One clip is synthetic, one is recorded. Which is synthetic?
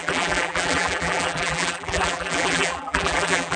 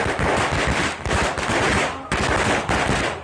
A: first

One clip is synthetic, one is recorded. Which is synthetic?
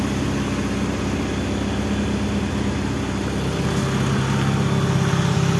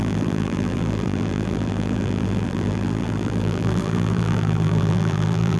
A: second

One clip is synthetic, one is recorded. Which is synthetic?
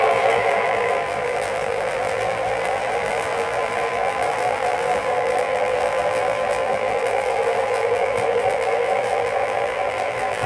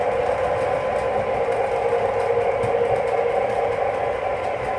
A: first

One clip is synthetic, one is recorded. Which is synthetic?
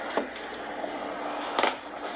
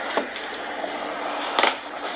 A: second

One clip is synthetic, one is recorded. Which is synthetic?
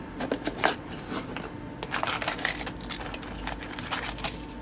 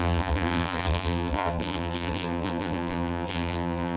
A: second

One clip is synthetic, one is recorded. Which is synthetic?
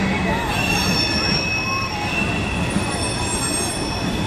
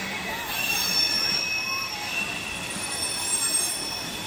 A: second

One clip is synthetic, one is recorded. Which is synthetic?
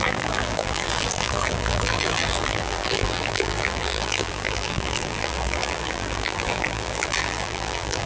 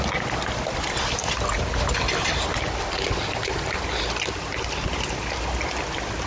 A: first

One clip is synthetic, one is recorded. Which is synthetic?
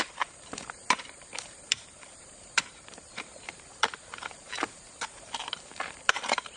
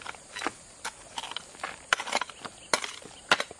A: first